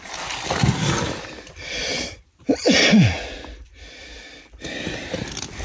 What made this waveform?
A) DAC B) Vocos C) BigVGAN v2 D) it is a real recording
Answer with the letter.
D